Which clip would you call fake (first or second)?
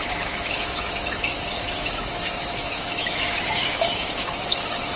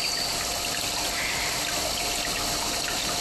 first